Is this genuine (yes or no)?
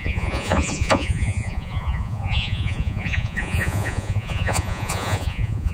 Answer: no